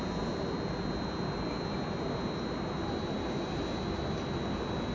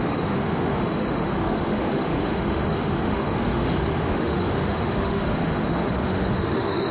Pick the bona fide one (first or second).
first